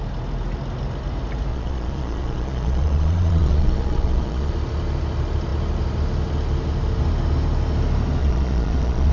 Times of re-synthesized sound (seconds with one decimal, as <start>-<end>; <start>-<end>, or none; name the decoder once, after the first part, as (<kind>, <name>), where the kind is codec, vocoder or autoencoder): 1.5-4.5 (vocoder, Vocos); 8.2-9.1